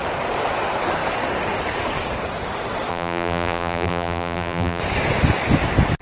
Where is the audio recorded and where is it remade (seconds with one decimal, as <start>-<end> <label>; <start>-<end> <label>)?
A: 0.0-2.9 recorded; 2.9-4.8 remade; 4.8-6.0 recorded